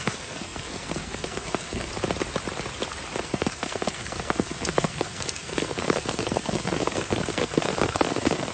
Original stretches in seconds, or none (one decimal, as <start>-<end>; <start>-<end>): 1.9-3.2